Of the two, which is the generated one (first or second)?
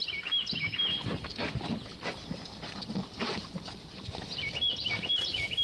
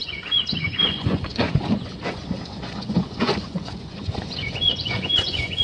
second